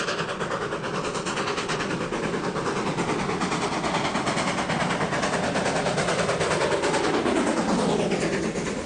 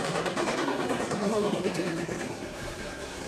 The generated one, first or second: second